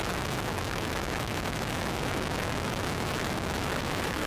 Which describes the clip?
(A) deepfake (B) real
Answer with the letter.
A